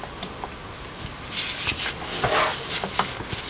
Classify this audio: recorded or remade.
recorded